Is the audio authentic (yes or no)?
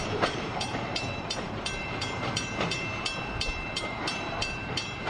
no